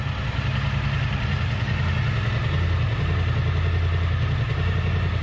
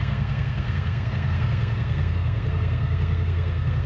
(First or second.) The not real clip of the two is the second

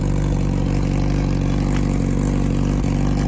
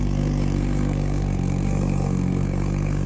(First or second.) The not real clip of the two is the second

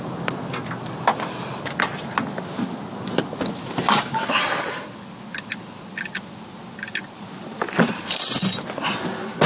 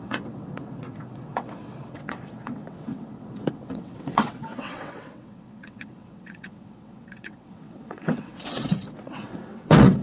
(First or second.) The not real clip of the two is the second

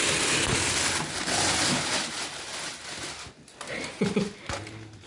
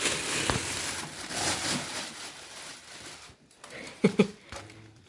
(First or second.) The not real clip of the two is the second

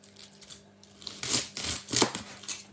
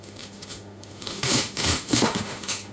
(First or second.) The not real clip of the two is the second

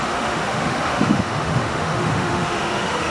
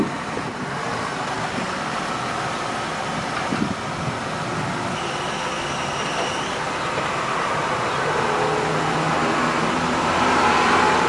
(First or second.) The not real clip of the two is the first